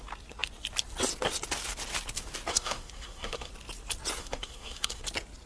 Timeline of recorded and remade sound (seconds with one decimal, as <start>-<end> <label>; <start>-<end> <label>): 0.0-2.5 recorded; 2.5-3.5 remade; 3.5-4.2 recorded; 4.2-5.0 remade; 5.0-5.5 recorded